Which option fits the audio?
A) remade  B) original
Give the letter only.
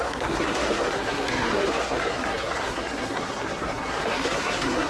A